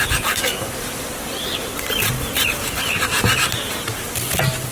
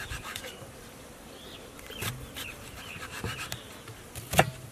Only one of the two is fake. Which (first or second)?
second